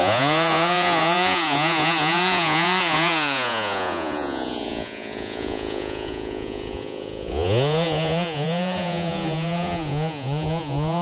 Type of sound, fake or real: fake